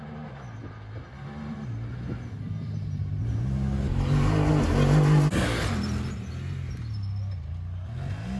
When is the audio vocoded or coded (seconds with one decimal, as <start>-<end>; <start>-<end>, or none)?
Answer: none